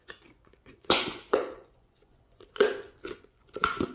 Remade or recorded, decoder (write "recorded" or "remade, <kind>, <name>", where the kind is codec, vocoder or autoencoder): remade, vocoder, Vocos